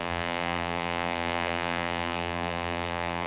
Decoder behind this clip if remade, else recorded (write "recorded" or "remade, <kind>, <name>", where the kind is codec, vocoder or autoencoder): remade, vocoder, BigVGAN v2